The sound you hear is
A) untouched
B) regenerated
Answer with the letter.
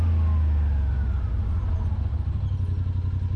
A